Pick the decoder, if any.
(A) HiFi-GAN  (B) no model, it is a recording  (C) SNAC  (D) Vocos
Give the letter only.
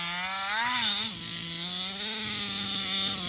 B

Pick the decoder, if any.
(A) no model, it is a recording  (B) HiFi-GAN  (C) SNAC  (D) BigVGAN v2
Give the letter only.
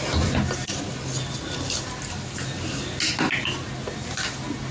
A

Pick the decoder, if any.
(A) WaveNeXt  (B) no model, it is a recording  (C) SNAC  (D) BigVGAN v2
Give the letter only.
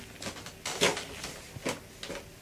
B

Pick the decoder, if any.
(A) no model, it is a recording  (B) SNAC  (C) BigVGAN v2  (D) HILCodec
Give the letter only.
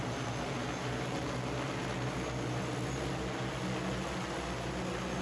A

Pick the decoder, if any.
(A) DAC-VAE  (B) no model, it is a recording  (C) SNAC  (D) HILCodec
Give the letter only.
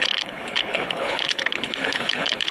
D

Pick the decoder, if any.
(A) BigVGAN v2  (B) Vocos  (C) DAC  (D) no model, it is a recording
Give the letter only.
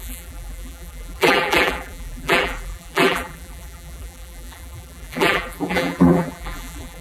A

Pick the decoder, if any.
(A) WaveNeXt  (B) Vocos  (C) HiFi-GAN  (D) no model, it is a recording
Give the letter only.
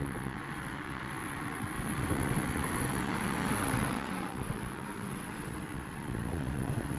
A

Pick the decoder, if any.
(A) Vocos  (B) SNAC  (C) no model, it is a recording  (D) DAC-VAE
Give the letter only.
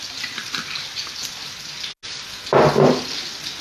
C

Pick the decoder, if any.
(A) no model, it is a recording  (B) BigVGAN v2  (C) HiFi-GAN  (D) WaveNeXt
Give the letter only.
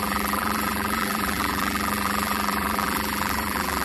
B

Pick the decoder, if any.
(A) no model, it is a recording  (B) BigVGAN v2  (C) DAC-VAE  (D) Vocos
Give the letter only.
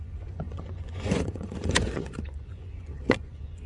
D